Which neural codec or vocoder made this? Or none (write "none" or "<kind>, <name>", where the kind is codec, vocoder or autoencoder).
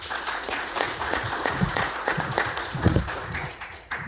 vocoder, Vocos